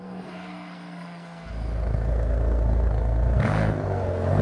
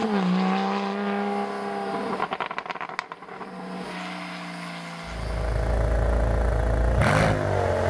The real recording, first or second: second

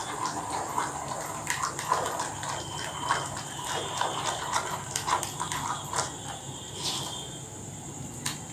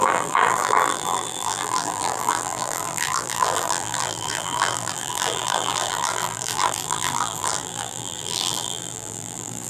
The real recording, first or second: first